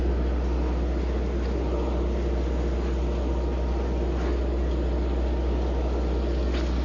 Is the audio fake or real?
real